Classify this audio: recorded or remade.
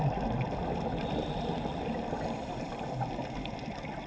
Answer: recorded